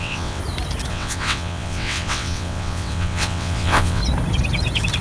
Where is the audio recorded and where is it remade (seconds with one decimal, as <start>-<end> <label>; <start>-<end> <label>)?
0.0-0.4 remade; 0.4-0.9 recorded; 0.9-4.0 remade; 4.0-5.0 recorded